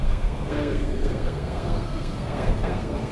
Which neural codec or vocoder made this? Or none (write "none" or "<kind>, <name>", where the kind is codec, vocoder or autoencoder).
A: codec, SNAC